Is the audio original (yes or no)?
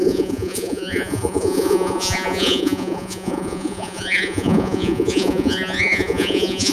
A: no